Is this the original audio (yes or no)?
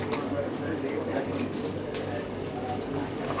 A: no